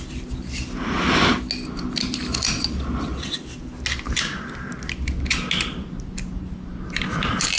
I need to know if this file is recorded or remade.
recorded